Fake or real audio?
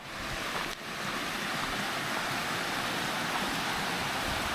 real